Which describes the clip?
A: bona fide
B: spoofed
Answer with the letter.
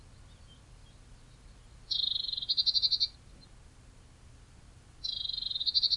A